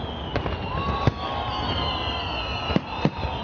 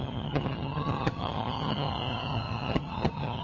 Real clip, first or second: first